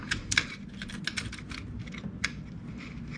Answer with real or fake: real